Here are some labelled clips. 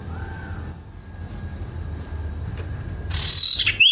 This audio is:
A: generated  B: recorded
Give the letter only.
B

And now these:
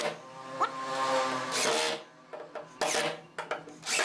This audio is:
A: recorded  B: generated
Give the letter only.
A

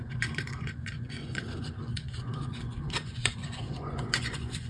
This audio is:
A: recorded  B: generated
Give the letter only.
B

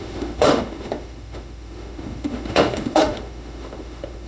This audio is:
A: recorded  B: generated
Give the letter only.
B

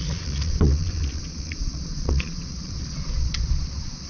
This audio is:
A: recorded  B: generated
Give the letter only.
B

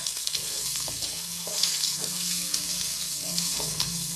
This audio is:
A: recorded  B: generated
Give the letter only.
B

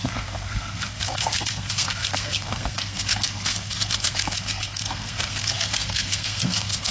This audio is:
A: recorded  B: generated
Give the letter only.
B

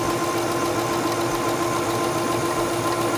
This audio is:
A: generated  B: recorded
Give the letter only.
B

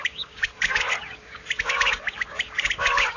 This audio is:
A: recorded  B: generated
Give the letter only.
B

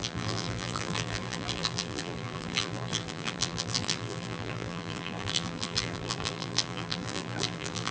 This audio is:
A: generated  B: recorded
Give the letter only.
A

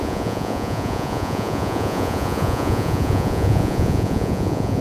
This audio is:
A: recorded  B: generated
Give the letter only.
B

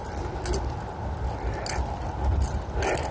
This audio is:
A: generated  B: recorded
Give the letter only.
B